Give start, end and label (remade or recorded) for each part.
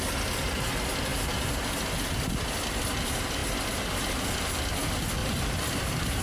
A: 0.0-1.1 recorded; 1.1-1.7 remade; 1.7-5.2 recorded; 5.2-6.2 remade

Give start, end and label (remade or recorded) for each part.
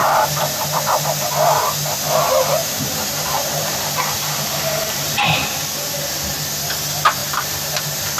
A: 0.0-0.8 remade; 0.8-2.6 recorded; 2.6-5.4 remade; 5.4-7.2 recorded; 7.2-7.7 remade; 7.7-8.2 recorded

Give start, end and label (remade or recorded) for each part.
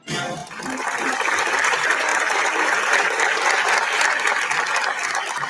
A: 0.0-0.4 remade; 0.4-1.0 recorded; 1.0-5.5 remade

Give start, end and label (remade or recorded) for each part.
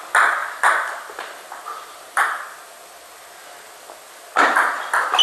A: 0.0-0.4 recorded; 0.4-2.4 remade; 2.4-5.2 recorded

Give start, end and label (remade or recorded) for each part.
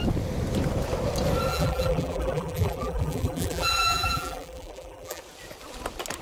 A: 0.0-1.5 recorded; 1.5-5.2 remade; 5.2-6.2 recorded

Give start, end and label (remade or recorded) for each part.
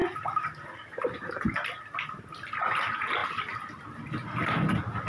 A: 0.0-5.1 recorded